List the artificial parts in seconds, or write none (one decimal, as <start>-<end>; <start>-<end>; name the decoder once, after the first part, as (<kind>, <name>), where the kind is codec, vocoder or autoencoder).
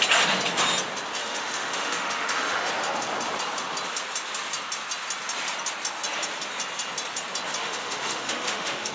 1.2-2.7 (autoencoder, DAC-VAE); 7.6-8.9